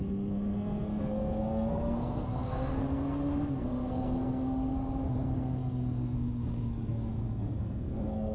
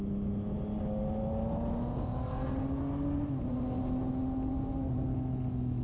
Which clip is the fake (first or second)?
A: first